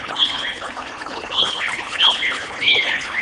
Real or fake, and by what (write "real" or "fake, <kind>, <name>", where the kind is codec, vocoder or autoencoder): fake, codec, HILCodec